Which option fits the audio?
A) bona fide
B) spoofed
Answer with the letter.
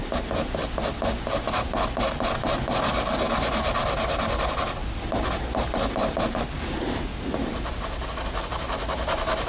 A